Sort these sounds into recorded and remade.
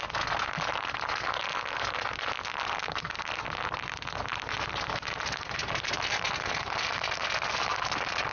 recorded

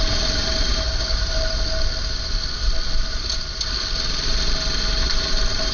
recorded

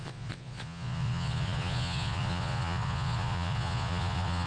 remade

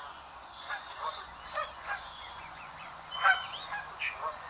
remade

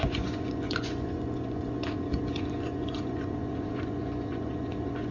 remade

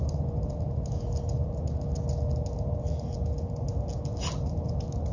recorded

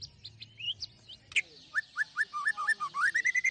recorded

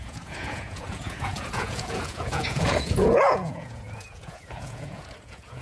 remade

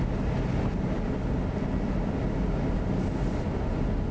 recorded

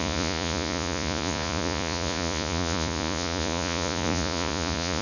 remade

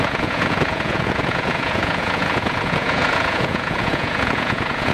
remade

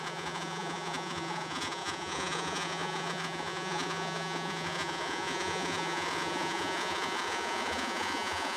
remade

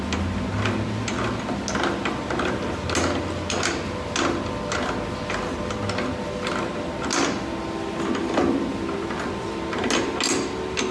recorded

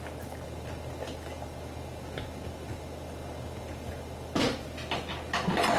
recorded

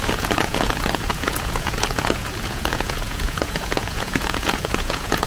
remade